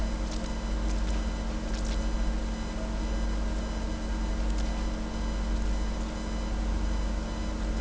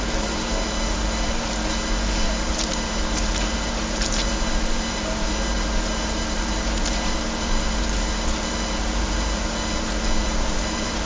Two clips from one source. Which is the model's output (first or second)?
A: second